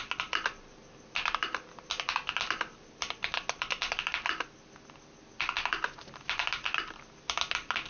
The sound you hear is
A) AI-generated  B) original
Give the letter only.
B